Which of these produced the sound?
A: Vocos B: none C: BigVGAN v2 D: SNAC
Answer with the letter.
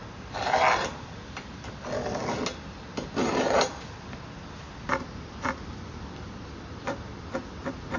B